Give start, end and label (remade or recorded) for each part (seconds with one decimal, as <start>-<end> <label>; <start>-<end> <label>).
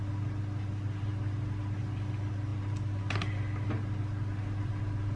0.0-5.2 recorded